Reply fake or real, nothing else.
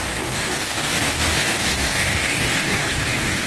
fake